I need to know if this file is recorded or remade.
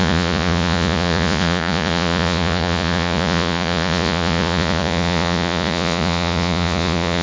remade